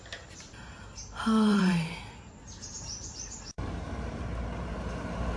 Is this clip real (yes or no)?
no